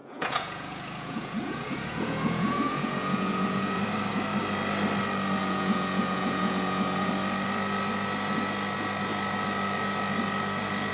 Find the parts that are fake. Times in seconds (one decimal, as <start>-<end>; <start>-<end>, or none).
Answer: 0.0-3.8; 5.4-7.1